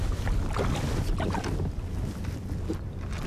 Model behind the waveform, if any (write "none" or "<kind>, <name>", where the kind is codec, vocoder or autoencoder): none